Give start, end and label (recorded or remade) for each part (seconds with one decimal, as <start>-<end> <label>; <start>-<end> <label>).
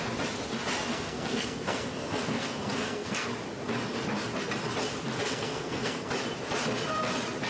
0.0-0.9 recorded; 0.9-3.3 remade; 3.3-5.2 recorded; 5.2-6.1 remade; 6.1-7.5 recorded